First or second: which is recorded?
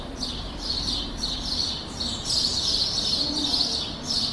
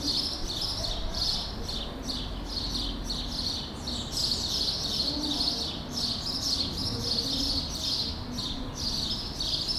second